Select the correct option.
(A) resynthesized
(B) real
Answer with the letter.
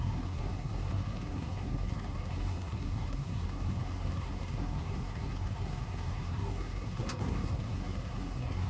A